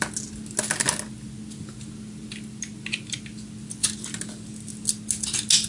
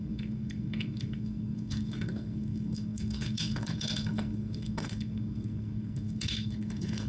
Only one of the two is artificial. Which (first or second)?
second